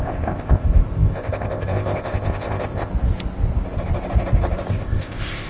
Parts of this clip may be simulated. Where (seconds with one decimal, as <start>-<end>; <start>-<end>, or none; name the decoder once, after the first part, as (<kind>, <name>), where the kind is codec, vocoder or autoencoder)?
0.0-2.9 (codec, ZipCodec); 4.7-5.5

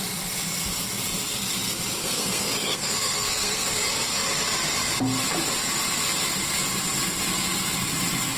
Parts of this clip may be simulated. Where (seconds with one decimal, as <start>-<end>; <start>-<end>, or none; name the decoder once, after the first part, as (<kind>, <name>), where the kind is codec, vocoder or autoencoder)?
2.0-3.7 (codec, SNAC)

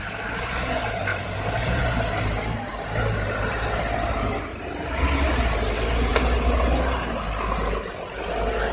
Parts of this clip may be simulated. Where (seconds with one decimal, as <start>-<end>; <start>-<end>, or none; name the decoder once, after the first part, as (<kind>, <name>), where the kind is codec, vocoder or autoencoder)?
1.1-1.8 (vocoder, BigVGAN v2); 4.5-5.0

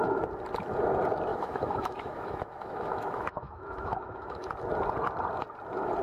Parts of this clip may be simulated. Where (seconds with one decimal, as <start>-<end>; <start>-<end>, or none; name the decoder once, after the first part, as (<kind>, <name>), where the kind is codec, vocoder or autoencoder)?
1.3-4.5 (autoencoder, DAC-VAE)

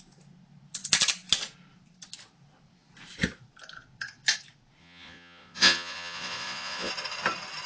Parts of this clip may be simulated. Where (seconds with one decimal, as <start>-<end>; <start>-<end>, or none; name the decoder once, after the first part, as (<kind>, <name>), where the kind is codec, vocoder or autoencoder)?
4.8-6.9 (vocoder, Vocos)

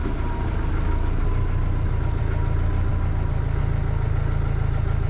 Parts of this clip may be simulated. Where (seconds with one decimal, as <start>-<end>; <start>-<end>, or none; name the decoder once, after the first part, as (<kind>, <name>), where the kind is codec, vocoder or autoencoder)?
none